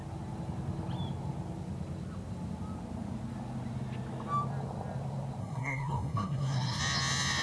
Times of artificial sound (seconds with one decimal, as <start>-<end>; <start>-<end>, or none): 5.4-6.8